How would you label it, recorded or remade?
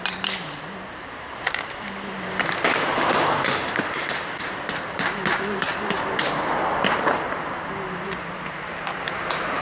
remade